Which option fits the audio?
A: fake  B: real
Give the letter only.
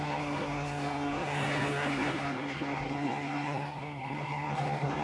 A